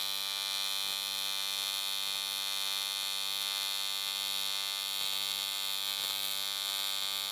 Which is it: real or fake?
real